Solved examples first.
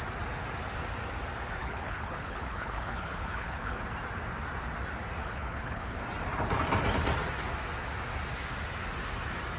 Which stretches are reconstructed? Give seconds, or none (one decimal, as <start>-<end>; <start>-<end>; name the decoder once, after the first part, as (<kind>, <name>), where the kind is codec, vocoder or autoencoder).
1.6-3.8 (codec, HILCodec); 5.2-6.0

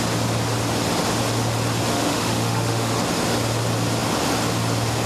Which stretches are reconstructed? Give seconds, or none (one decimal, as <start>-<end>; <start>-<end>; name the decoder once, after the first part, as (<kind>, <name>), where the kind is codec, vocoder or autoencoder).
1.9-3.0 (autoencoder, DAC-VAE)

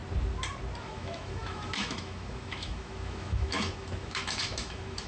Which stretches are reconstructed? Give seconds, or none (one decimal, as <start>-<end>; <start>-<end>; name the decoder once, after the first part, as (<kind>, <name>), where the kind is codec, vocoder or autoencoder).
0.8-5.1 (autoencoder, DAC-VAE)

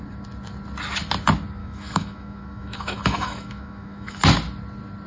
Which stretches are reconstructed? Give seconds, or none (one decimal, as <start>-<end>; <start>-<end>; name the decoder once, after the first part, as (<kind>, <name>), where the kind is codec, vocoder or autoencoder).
1.6-4.2 (autoencoder, DAC-VAE)

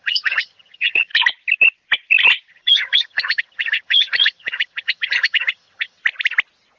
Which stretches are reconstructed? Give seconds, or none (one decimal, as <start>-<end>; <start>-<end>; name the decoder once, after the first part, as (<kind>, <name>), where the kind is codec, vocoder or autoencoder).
0.0-1.1 (vocoder, HiFi-GAN); 2.5-6.0

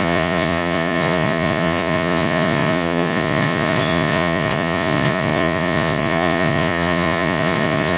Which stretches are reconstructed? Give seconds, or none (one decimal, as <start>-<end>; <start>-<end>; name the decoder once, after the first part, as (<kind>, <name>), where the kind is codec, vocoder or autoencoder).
0.0-8.0 (vocoder, Vocos)